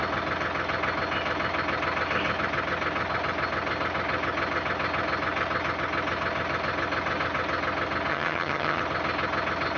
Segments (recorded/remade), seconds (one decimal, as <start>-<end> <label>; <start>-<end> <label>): 0.0-8.1 recorded; 8.1-8.8 remade; 8.8-9.8 recorded